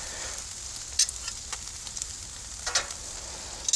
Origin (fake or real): real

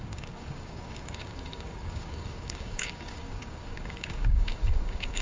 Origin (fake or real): fake